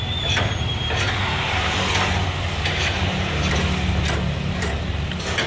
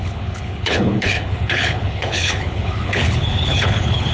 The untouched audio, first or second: first